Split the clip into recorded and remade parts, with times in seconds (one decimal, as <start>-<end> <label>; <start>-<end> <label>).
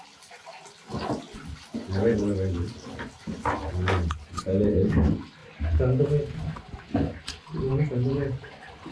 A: 0.0-8.9 recorded